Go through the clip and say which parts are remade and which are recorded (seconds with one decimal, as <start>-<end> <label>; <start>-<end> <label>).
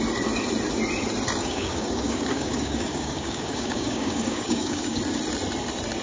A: 0.0-1.4 recorded; 1.4-5.0 remade; 5.0-6.0 recorded